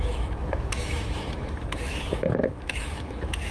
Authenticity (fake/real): fake